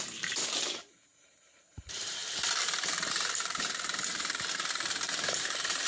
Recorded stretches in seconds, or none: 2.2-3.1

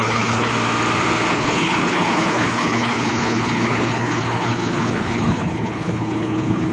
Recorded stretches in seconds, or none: 0.5-1.3

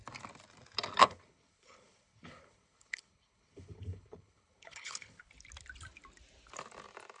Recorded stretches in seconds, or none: 0.0-1.0; 5.3-7.2

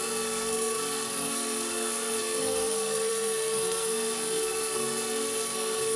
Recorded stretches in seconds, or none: none